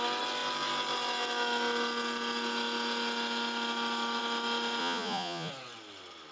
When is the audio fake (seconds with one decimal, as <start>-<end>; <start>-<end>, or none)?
4.8-5.5